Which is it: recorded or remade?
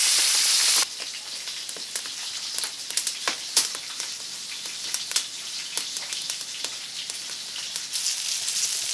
recorded